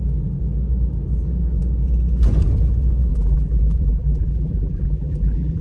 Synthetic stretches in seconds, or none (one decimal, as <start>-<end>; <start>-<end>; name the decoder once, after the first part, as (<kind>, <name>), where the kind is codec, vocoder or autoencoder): 3.1-5.6 (vocoder, BigVGAN v2)